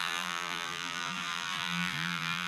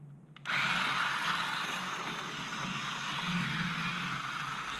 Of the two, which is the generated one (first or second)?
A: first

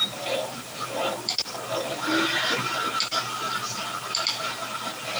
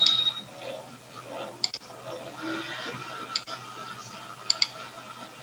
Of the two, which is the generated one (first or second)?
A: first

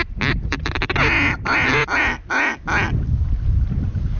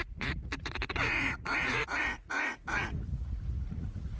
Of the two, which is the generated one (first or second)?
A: second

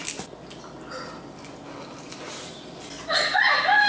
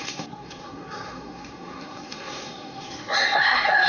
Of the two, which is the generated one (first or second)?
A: second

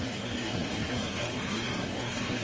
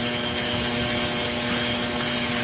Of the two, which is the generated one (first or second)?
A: first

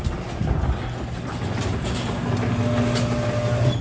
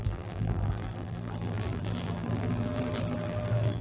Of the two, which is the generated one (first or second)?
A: second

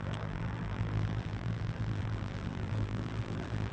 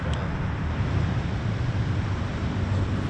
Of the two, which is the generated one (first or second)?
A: first